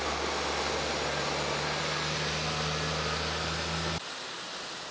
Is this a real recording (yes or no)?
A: yes